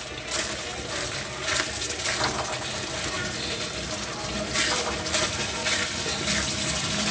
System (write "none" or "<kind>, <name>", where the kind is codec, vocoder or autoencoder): none